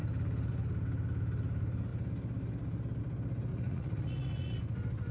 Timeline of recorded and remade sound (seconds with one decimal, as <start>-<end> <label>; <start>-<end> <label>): 0.0-3.5 recorded; 3.5-4.6 remade; 4.6-5.1 recorded